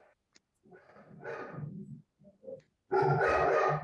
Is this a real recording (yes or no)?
yes